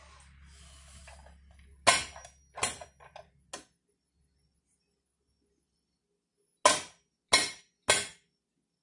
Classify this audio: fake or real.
real